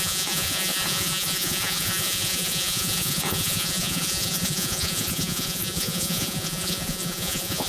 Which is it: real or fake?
fake